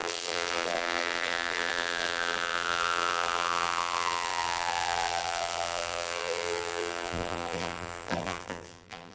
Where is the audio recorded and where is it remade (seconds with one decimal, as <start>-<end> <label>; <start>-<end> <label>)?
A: 0.0-9.1 remade